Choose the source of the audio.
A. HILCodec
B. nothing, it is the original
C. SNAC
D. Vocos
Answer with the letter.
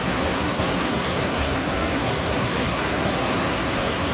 C